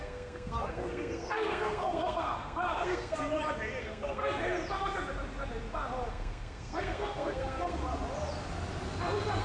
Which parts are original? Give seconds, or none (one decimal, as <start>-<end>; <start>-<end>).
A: 3.2-3.8; 4.2-6.1; 7.8-9.4